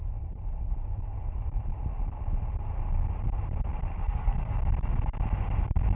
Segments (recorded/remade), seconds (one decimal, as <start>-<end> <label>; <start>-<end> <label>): 0.0-3.9 recorded; 3.9-4.5 remade; 4.5-5.9 recorded

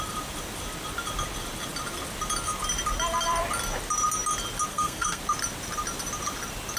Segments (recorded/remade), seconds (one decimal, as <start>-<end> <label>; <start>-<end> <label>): 0.0-4.7 recorded; 4.7-5.2 remade; 5.2-6.8 recorded

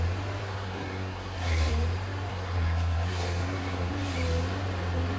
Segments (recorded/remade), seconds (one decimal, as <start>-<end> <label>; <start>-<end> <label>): 0.0-0.4 recorded; 0.4-1.7 remade; 1.7-2.3 recorded; 2.3-3.9 remade; 3.9-5.2 recorded

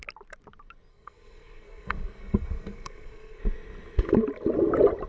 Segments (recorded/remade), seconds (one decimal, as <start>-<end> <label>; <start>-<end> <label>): 0.0-0.9 recorded; 0.9-3.4 remade; 3.4-5.1 recorded